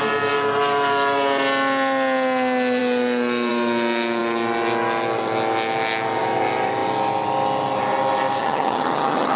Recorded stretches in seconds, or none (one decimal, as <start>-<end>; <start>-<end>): 0.0-8.4

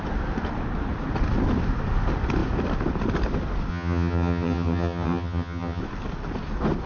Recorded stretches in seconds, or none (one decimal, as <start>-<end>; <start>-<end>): 0.0-3.7; 5.8-6.9

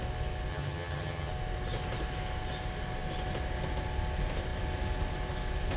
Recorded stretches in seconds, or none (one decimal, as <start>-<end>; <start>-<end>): 0.0-0.5; 1.3-5.8

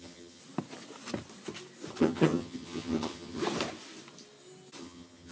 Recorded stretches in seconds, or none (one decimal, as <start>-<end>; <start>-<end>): 0.4-2.0; 3.4-4.8

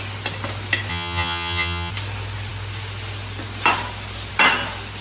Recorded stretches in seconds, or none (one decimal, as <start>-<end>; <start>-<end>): 0.0-0.9; 1.9-5.0